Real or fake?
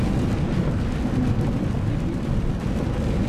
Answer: real